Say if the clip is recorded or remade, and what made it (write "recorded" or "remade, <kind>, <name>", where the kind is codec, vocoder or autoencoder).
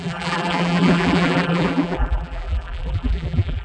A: remade, vocoder, BigVGAN v2